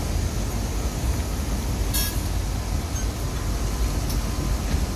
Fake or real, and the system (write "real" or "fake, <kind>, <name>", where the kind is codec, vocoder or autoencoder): real